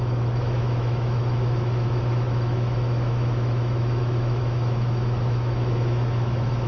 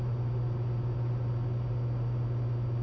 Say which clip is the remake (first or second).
first